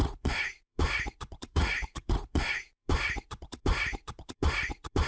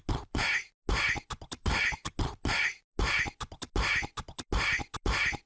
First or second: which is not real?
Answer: first